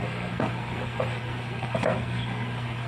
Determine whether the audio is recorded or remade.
remade